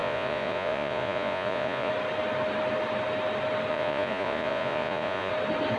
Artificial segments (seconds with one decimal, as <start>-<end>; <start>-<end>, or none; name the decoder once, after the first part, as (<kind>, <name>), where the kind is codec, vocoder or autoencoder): 0.0-1.9 (vocoder, Vocos); 3.7-5.3